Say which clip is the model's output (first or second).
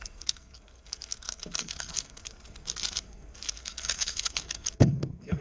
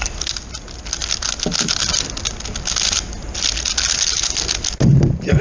first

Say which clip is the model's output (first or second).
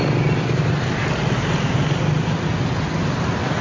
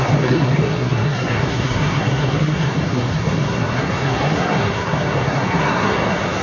second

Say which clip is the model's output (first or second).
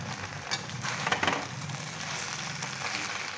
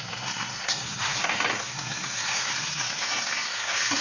second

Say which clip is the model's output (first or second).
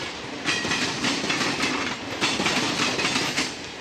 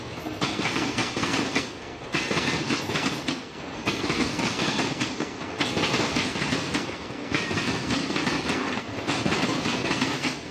second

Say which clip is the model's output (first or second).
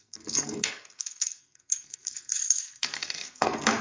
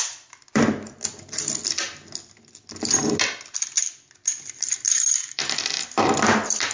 first